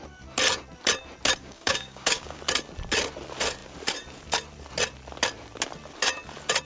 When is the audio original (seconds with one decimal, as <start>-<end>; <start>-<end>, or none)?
0.0-1.4; 2.4-6.6